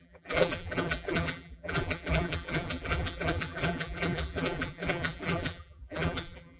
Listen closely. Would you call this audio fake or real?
fake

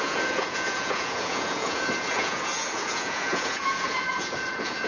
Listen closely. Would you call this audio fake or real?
fake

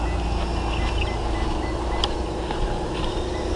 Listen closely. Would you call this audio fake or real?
real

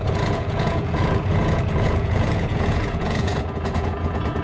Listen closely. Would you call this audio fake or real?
fake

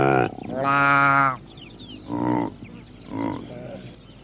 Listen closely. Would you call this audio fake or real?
real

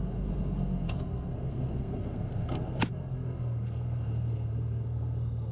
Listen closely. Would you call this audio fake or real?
fake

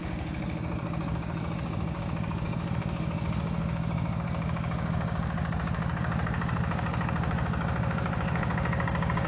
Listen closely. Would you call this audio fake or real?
fake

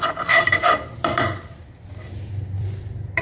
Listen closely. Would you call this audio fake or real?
fake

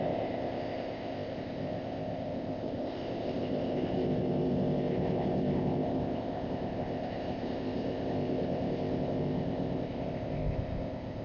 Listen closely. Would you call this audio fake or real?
fake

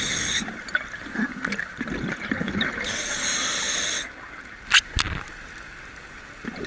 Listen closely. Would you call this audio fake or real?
real